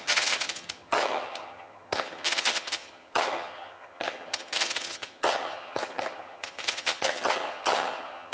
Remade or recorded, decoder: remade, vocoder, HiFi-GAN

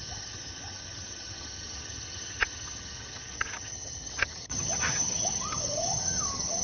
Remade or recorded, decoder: remade, vocoder, HiFi-GAN